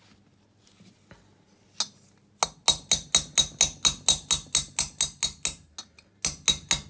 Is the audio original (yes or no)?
yes